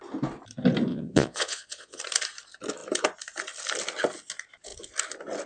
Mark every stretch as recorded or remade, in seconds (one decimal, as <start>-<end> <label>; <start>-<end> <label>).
0.0-0.9 recorded; 0.9-2.0 remade; 2.0-5.5 recorded